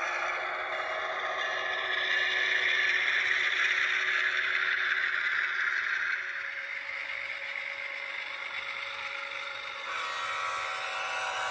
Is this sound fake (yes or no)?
no